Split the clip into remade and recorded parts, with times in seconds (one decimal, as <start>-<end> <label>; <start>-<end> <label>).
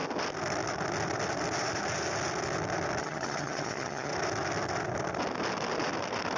0.0-3.0 recorded; 3.0-4.1 remade; 4.1-6.4 recorded